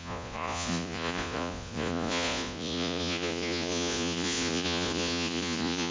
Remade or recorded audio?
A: remade